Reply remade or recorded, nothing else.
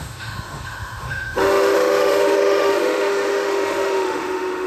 remade